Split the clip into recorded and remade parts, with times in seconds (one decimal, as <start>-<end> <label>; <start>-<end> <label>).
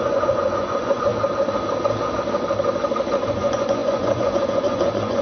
0.0-1.1 remade; 1.1-3.3 recorded; 3.3-5.2 remade